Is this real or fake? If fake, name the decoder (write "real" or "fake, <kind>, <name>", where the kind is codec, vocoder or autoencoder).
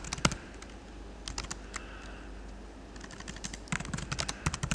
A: real